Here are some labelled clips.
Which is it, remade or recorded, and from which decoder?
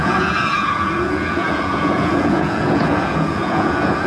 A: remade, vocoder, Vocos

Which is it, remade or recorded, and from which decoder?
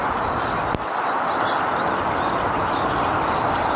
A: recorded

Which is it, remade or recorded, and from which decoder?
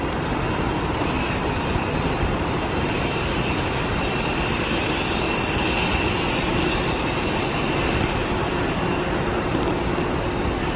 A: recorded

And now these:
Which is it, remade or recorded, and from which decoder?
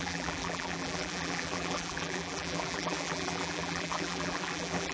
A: remade, vocoder, BigVGAN v2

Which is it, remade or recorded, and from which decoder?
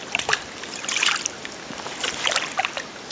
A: recorded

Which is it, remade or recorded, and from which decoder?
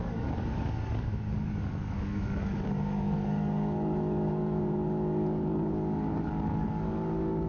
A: remade, codec, DAC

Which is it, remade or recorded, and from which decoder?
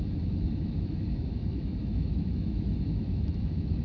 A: remade, autoencoder, DAC-VAE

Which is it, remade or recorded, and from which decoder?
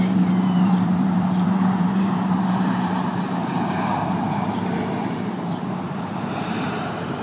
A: remade, vocoder, BigVGAN v2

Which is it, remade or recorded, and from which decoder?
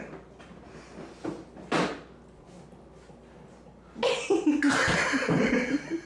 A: recorded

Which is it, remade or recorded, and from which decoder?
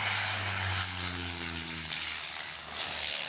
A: remade, codec, DAC